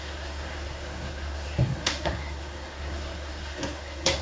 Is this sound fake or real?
fake